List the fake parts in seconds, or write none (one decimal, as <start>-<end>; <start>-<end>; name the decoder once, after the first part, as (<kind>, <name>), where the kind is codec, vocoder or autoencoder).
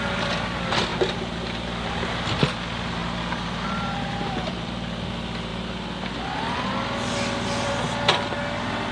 0.9-2.4 (vocoder, BigVGAN v2); 3.0-4.7